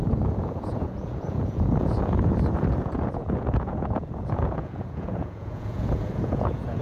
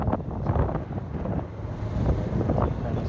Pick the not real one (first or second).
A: first